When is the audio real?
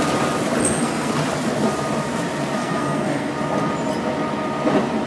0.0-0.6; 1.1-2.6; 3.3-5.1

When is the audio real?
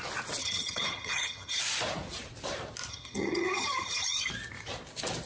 0.0-0.4; 1.6-2.9; 4.3-5.3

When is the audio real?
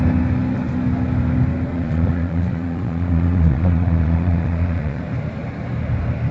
0.0-1.7; 5.0-6.3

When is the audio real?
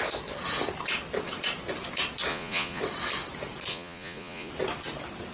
0.0-2.3; 2.8-3.7; 4.5-5.3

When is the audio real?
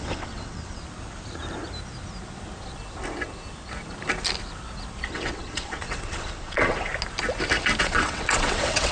0.8-5.1; 6.9-7.8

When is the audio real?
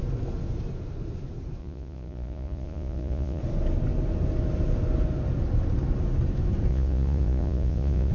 0.0-1.6; 3.4-6.7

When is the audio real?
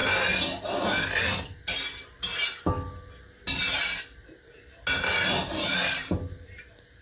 0.0-5.4; 6.1-7.0